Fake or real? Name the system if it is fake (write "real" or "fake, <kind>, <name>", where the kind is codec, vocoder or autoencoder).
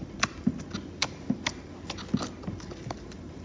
real